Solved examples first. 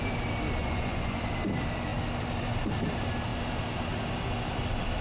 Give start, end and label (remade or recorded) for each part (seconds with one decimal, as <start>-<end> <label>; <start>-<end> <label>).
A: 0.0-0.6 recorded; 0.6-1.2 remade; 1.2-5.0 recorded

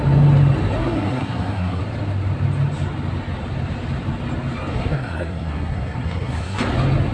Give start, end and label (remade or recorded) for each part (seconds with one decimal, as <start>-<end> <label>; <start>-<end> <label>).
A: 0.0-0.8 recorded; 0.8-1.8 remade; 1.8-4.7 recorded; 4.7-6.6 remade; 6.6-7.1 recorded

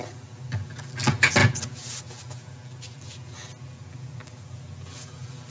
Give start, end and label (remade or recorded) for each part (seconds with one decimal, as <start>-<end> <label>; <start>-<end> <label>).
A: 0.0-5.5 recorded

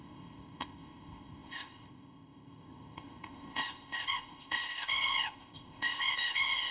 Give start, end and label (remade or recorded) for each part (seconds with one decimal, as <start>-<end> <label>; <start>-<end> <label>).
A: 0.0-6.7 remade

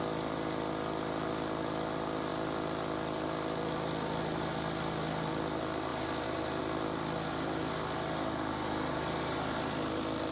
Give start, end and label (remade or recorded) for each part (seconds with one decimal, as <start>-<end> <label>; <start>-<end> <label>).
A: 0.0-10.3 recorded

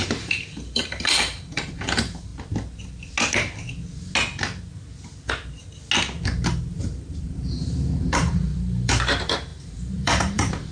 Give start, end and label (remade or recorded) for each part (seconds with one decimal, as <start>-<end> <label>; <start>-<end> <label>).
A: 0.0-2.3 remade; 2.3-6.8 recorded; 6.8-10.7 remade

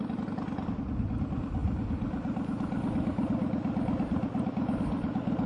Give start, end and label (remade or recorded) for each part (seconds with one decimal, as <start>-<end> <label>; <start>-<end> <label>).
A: 0.0-5.5 recorded

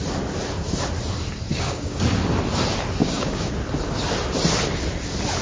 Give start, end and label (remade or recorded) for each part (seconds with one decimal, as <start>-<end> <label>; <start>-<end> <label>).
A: 0.0-1.5 recorded; 1.5-2.0 remade; 2.0-3.0 recorded; 3.0-3.5 remade; 3.5-5.4 recorded